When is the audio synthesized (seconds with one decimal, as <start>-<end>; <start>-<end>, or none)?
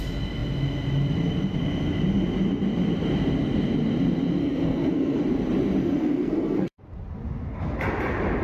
4.4-5.2; 5.8-6.8